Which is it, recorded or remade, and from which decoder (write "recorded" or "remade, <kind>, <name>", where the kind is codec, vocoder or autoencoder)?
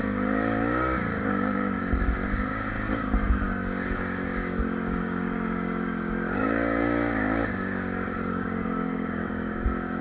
remade, codec, DAC